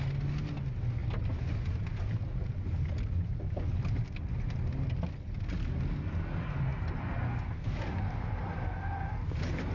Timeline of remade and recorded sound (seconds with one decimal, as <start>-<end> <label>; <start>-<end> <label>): 0.0-9.7 recorded